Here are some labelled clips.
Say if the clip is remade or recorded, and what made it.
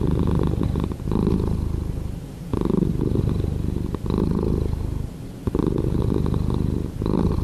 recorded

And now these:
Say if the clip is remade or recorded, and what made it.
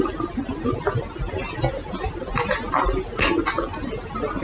recorded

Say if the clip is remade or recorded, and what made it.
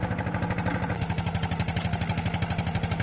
recorded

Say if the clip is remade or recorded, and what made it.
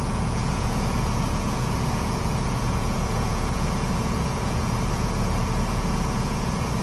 remade, vocoder, Vocos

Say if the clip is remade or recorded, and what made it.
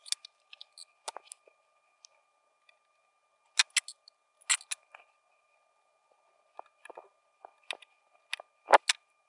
recorded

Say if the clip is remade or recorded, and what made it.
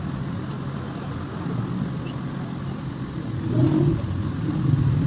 recorded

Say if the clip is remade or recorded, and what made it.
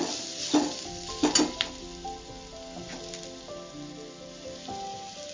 recorded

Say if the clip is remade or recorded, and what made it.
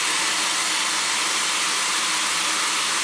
recorded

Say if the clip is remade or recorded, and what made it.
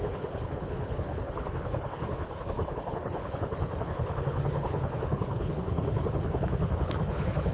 remade, codec, HILCodec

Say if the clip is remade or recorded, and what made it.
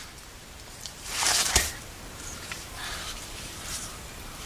remade, vocoder, BigVGAN v2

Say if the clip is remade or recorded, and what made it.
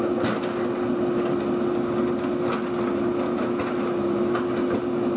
recorded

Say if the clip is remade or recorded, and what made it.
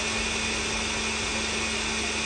recorded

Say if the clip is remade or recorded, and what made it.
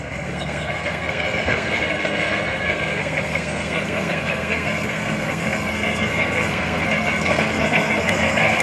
remade, codec, SNAC